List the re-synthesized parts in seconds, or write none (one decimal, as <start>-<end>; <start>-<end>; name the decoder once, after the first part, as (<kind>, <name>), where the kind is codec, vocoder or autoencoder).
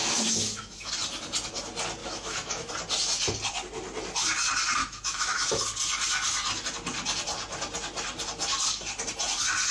0.0-0.9 (autoencoder, DAC-VAE); 2.0-2.7; 4.8-5.6